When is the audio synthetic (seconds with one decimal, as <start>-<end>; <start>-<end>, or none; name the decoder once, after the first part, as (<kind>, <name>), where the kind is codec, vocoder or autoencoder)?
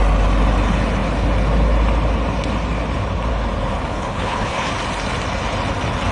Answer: 3.9-4.7 (codec, HILCodec)